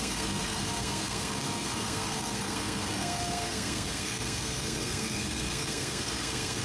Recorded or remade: remade